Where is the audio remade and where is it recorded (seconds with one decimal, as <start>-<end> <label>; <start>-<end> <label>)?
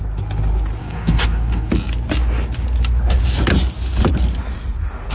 0.0-0.8 recorded; 0.8-1.7 remade; 1.7-5.1 recorded